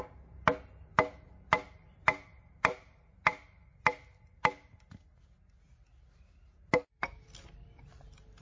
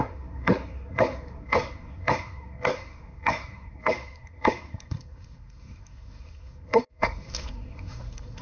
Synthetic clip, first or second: second